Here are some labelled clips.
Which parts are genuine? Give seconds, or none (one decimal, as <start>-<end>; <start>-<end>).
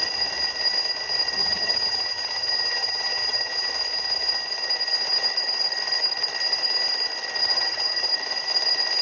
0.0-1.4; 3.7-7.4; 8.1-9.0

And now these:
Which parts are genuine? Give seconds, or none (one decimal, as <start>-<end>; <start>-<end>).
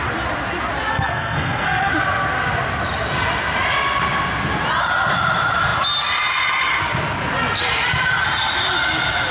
0.0-0.9; 1.9-9.3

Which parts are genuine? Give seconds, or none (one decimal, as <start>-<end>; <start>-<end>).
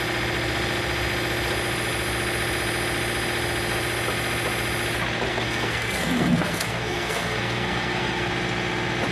0.0-5.3; 8.3-9.1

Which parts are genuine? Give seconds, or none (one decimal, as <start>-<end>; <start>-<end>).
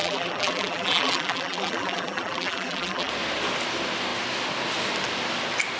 3.1-5.8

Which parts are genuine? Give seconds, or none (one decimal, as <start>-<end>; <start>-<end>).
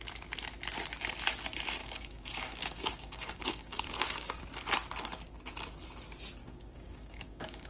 0.0-1.8; 4.4-6.4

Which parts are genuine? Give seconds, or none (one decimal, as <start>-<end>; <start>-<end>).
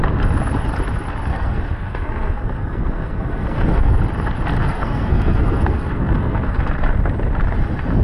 0.0-1.3; 4.0-4.6; 6.6-8.0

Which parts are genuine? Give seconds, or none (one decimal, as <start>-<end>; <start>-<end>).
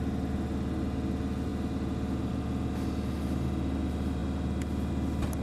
0.0-5.4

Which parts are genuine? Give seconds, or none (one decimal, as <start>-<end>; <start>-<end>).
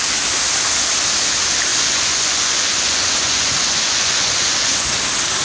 0.0-1.7; 4.9-5.4